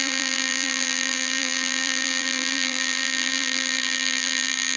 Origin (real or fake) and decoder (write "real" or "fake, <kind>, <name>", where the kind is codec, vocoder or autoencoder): fake, vocoder, BigVGAN v2